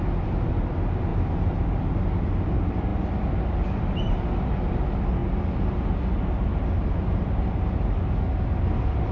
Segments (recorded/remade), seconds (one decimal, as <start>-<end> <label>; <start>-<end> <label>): 0.0-1.1 recorded; 1.1-1.9 remade; 1.9-9.1 recorded